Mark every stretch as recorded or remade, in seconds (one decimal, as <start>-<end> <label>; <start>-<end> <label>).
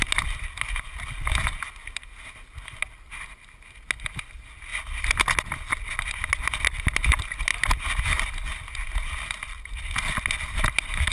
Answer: 0.0-11.1 recorded